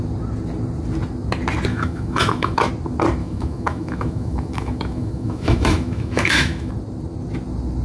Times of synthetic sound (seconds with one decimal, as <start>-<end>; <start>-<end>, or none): 1.7-2.7; 3.2-6.7